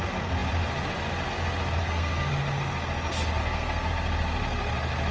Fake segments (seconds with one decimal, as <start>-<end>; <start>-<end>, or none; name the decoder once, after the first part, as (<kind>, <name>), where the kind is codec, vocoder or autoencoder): 1.8-2.3 (codec, SNAC); 3.4-3.9